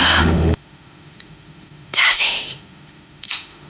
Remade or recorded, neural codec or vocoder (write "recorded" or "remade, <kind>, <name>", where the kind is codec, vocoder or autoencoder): remade, autoencoder, DAC-VAE